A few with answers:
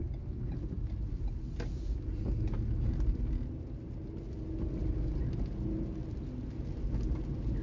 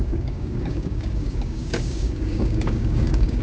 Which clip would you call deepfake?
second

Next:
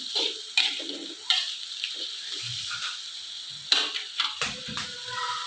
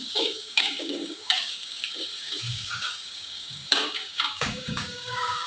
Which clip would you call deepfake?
second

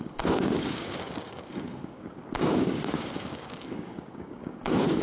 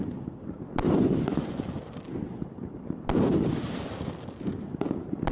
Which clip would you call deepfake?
first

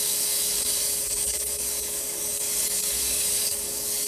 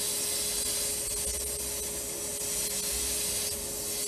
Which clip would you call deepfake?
first